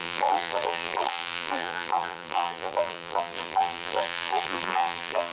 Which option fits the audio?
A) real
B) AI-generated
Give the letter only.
B